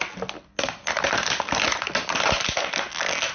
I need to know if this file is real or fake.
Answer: real